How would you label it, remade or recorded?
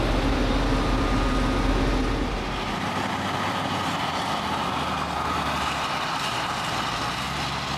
recorded